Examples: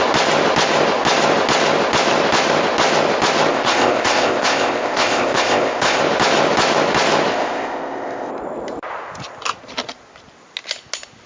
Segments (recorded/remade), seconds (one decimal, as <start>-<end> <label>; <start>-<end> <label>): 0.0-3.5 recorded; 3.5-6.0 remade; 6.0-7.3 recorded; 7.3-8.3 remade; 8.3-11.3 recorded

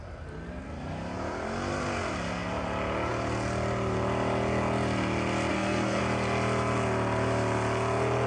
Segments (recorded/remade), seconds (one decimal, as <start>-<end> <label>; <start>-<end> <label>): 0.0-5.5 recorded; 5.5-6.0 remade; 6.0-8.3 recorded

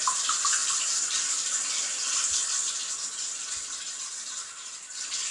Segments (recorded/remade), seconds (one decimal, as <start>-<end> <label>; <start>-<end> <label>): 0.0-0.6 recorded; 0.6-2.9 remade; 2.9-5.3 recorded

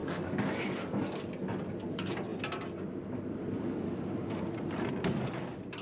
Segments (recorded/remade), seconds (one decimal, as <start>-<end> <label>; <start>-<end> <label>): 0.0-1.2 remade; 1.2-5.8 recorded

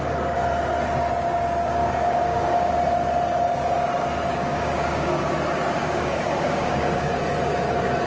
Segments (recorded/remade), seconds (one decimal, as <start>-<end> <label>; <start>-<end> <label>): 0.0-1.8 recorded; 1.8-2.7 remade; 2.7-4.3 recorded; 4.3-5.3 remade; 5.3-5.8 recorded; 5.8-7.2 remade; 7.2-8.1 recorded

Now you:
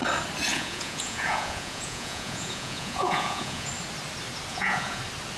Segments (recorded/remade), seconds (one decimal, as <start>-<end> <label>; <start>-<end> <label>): 0.0-0.5 recorded; 0.5-3.7 remade; 3.7-4.5 recorded; 4.5-5.0 remade; 5.0-5.4 recorded

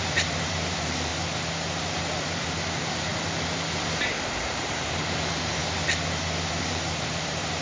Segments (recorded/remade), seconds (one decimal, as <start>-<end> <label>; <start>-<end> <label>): 0.0-1.1 remade; 1.1-2.0 recorded; 2.0-3.1 remade; 3.1-3.8 recorded; 3.8-5.6 remade; 5.6-6.6 recorded; 6.6-7.6 remade